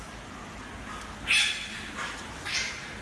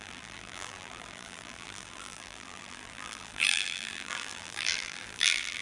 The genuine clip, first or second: first